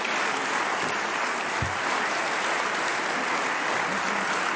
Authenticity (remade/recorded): recorded